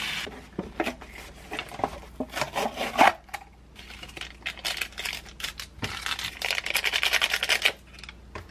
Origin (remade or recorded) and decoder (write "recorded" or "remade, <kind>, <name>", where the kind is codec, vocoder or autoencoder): recorded